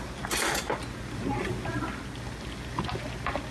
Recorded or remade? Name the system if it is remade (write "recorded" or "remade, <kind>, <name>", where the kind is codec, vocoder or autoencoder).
recorded